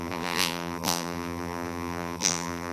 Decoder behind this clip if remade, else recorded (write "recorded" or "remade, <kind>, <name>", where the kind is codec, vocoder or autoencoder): remade, vocoder, BigVGAN v2